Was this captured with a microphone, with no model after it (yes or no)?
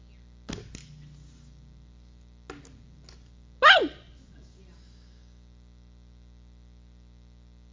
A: yes